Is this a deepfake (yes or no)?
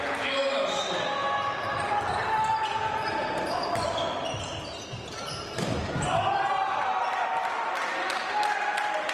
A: no